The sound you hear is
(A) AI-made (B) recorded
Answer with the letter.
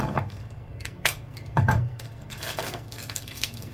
A